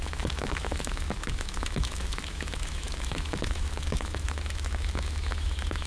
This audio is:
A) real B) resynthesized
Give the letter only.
B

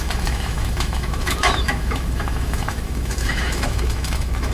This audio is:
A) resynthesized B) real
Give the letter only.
A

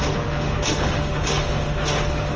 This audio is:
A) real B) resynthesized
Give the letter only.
B